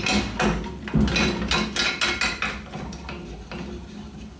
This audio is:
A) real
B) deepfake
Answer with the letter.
A